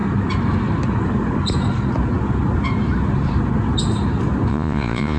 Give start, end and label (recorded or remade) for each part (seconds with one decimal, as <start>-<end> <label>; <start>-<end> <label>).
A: 0.0-4.5 recorded; 4.5-5.2 remade

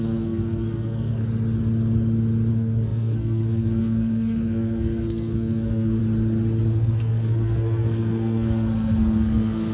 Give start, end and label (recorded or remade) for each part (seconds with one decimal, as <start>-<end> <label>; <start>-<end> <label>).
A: 0.0-1.2 remade; 1.2-2.5 recorded; 2.5-6.0 remade; 6.0-6.7 recorded; 6.7-9.7 remade

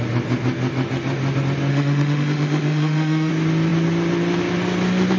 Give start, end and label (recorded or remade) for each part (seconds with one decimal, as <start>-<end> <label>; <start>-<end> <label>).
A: 0.0-1.7 recorded; 1.7-3.3 remade; 3.3-5.2 recorded

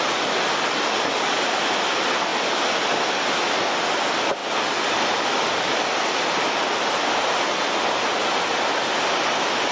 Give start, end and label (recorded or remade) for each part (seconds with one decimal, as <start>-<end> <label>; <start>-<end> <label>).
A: 0.0-9.7 recorded

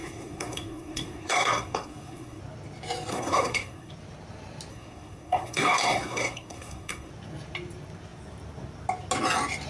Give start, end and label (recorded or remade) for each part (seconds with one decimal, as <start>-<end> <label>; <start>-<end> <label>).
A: 0.0-2.4 remade; 2.4-3.1 recorded; 3.1-3.9 remade; 3.9-4.7 recorded; 4.7-7.1 remade; 7.1-9.7 recorded

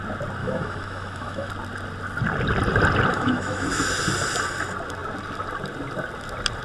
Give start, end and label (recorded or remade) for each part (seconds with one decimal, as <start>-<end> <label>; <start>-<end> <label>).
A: 0.0-0.4 recorded; 0.4-1.5 remade; 1.5-3.1 recorded; 3.1-4.0 remade; 4.0-6.6 recorded